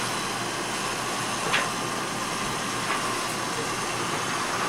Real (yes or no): yes